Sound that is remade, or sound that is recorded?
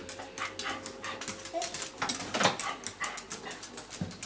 recorded